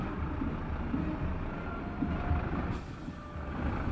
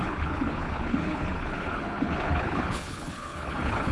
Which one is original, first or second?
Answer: first